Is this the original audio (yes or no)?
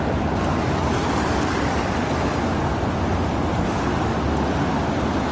yes